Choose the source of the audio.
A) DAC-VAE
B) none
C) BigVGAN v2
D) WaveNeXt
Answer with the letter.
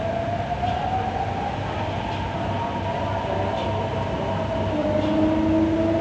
B